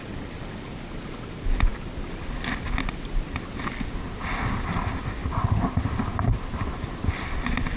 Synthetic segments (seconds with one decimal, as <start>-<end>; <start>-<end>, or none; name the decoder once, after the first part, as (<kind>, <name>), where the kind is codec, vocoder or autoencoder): none